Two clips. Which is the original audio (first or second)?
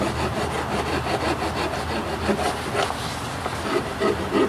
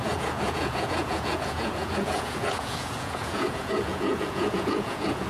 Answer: first